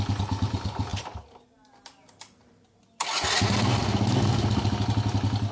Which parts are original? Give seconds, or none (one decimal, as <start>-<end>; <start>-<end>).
0.0-5.5